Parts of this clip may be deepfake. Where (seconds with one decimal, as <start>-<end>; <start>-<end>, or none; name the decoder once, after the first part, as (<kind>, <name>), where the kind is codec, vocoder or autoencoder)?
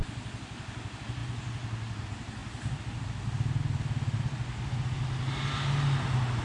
none